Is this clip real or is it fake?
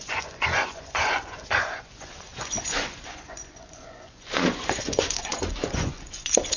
fake